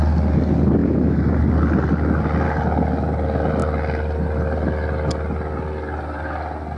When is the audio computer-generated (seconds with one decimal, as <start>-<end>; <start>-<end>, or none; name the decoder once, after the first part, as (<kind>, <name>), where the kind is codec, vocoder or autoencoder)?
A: 0.8-1.4 (autoencoder, DAC-VAE)